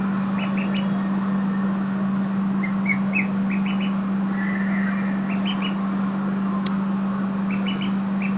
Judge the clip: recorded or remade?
recorded